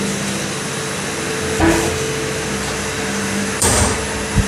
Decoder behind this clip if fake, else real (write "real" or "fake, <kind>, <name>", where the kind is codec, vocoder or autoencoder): fake, vocoder, BigVGAN v2